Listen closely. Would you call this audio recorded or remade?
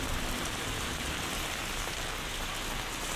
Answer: recorded